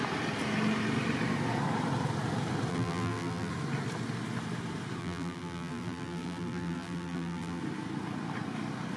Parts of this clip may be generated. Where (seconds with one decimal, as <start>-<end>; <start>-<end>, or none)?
2.7-3.5; 5.0-7.6